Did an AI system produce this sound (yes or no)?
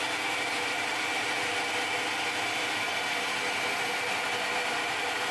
no